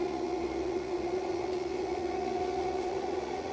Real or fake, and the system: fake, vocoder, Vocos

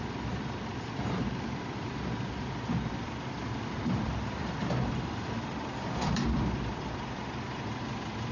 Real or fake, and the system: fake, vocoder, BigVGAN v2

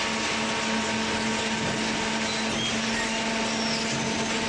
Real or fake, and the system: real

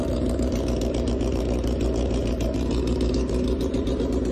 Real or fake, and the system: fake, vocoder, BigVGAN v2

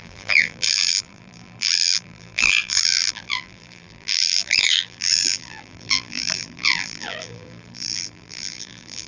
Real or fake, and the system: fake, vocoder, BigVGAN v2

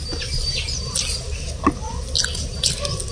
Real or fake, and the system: real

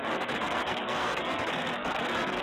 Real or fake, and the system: fake, codec, SNAC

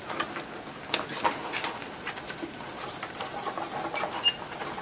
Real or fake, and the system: real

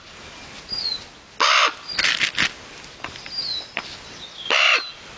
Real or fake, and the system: real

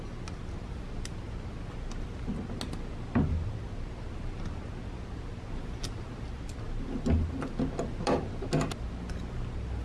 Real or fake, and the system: real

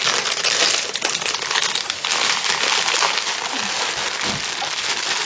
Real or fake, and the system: real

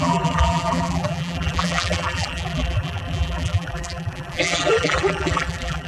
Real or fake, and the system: fake, vocoder, BigVGAN v2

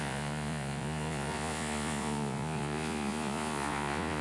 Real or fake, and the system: fake, vocoder, Vocos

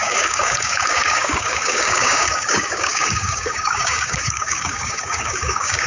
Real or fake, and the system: fake, codec, DAC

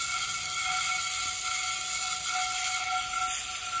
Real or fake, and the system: real